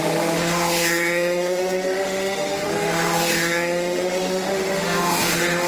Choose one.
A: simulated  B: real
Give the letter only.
A